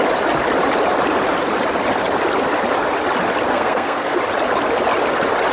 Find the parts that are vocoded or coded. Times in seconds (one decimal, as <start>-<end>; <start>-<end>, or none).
3.5-4.2